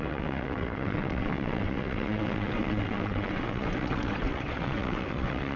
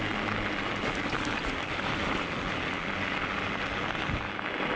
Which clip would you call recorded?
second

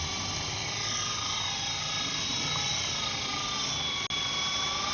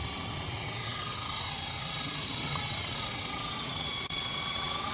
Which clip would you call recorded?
first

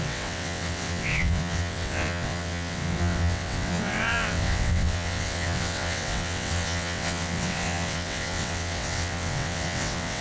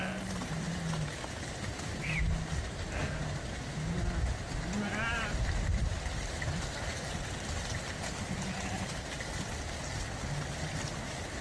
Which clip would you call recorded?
second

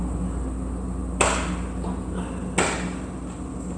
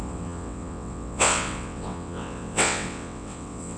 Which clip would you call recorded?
first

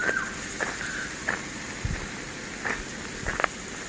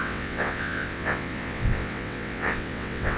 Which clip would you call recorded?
first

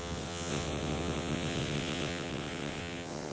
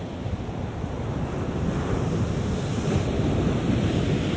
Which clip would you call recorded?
second